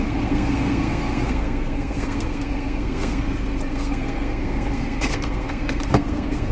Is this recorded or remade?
remade